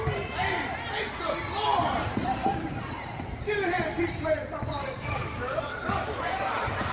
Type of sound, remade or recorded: remade